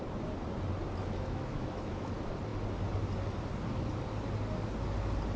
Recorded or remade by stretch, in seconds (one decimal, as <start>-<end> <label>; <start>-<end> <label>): 0.0-1.0 recorded; 1.0-2.1 remade; 2.1-5.4 recorded